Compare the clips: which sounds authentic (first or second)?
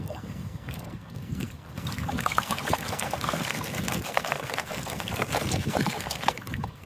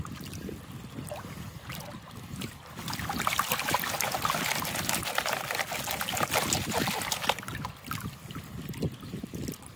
second